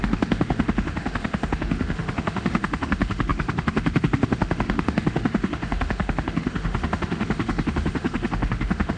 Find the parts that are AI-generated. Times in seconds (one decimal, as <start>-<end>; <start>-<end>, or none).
0.0-9.0